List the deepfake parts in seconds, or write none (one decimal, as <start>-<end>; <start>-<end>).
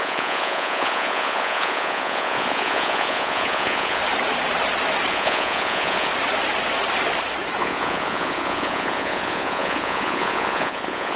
0.0-4.0; 5.1-6.1; 7.6-11.2